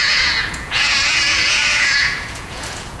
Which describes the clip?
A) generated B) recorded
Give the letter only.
A